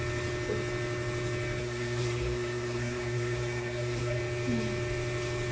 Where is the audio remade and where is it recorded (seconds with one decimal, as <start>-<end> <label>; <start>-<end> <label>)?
0.0-1.6 recorded; 1.6-4.2 remade; 4.2-5.5 recorded